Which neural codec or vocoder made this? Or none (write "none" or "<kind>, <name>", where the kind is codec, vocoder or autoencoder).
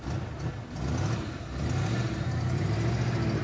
none